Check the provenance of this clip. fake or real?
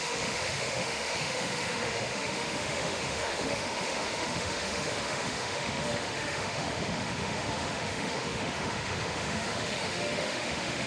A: fake